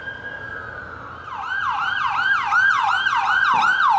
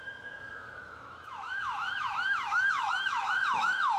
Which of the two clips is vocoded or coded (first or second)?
second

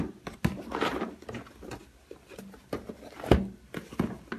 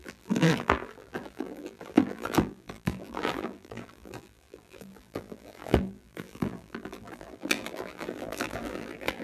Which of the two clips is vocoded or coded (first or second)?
second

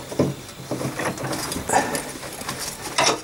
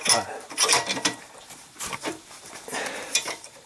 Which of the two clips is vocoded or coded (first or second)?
second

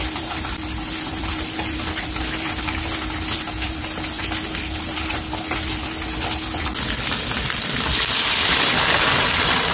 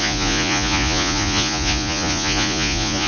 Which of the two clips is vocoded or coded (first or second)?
second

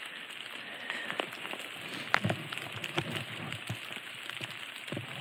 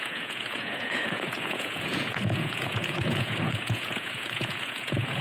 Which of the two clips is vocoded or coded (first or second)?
second